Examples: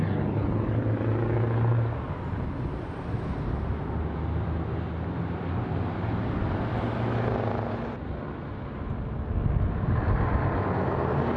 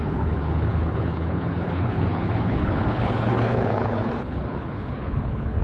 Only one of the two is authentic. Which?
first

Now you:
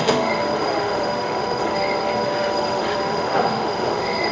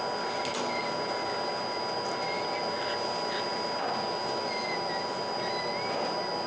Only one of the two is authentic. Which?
second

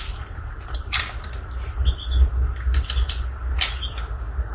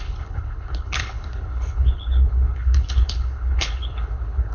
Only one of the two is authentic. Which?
first